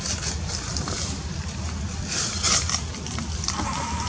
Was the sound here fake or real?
fake